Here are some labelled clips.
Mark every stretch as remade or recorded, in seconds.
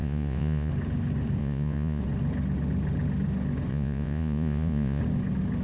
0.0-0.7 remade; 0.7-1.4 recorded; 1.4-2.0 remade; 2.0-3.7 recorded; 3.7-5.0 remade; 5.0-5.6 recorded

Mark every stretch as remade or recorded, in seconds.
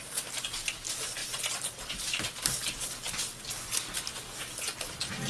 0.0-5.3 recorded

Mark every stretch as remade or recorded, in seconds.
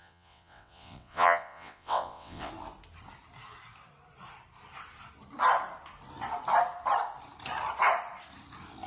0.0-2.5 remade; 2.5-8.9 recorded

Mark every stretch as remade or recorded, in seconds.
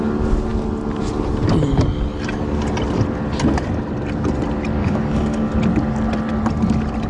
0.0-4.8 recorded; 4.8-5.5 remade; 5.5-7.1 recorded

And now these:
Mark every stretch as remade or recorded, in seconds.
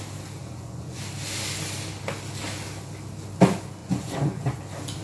0.0-0.4 recorded; 0.4-1.0 remade; 1.0-3.8 recorded; 3.8-4.6 remade; 4.6-5.0 recorded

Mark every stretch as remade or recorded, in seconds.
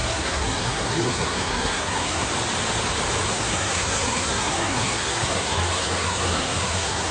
0.0-2.3 remade; 2.3-3.3 recorded; 3.3-7.1 remade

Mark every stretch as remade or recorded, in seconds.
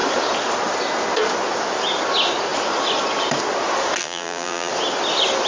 0.0-4.0 recorded; 4.0-4.7 remade; 4.7-5.5 recorded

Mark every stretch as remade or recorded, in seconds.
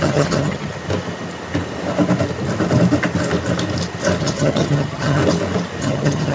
0.0-0.8 remade; 0.8-4.2 recorded; 4.2-5.2 remade; 5.2-5.8 recorded; 5.8-6.3 remade